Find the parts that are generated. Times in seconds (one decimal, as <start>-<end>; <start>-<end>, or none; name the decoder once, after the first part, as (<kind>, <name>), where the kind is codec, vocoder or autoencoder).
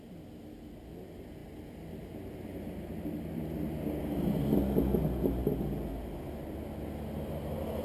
none